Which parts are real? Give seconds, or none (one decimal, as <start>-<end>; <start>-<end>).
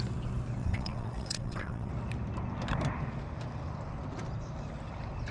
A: 0.0-0.6; 1.9-5.3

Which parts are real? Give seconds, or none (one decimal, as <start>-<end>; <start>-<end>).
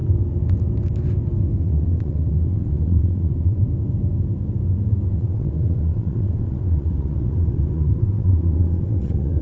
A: 0.0-1.6; 3.6-5.1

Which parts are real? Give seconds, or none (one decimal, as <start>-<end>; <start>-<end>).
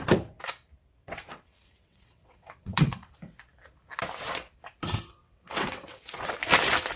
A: 0.0-1.0; 3.1-5.2; 6.3-7.0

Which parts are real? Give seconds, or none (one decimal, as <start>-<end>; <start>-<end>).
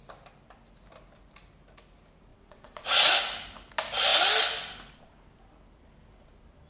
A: 0.0-2.3; 3.1-6.7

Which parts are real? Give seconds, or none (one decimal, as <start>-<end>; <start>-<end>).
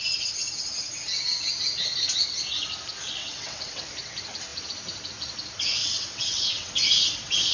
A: 0.0-3.2; 3.8-5.8; 6.7-7.5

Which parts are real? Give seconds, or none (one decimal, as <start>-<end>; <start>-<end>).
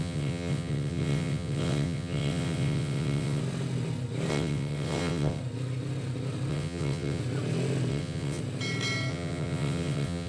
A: 3.4-4.3; 5.4-6.5; 7.2-7.9; 8.4-9.1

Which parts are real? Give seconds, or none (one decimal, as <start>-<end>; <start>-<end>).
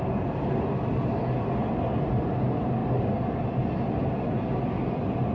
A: 0.0-5.3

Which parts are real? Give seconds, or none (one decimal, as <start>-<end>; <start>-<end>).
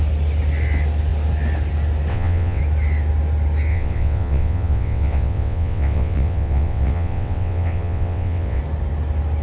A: 0.0-2.1; 2.6-3.7; 8.6-9.4